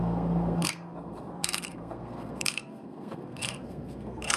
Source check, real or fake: fake